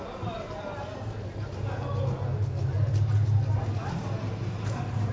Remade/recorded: recorded